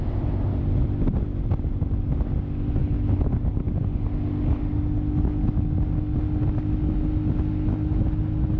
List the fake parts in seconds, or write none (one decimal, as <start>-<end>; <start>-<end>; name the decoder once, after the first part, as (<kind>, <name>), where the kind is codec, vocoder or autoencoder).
none